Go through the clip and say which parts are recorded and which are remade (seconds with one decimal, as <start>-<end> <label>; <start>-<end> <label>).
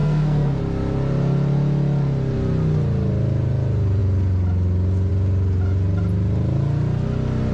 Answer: 0.0-0.6 remade; 0.6-7.5 recorded